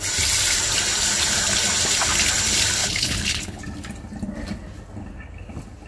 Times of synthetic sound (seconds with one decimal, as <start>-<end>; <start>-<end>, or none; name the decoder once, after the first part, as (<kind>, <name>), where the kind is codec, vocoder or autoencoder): 2.8-3.6 (codec, HILCodec)